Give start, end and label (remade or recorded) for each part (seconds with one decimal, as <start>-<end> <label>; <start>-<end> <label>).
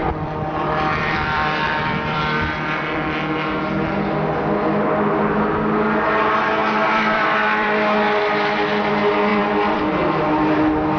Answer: 0.0-2.2 remade; 2.2-6.6 recorded; 6.6-8.9 remade; 8.9-9.3 recorded; 9.3-9.8 remade; 9.8-11.0 recorded